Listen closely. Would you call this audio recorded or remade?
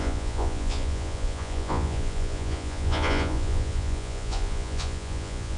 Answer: remade